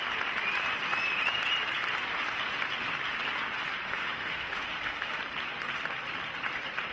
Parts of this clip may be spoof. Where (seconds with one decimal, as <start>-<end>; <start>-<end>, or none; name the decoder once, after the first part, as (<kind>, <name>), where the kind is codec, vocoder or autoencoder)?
3.9-5.2 (autoencoder, DAC-VAE)